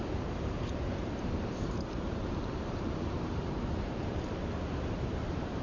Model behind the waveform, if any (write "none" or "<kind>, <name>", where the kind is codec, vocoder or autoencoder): vocoder, BigVGAN v2